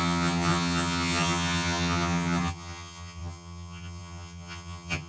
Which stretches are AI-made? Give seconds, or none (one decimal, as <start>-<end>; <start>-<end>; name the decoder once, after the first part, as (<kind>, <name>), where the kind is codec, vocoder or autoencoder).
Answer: 0.0-5.1 (vocoder, HiFi-GAN)